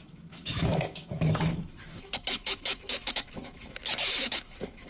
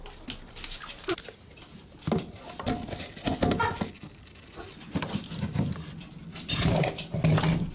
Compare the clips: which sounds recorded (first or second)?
second